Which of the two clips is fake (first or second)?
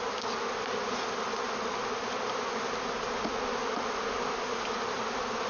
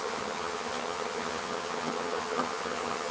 second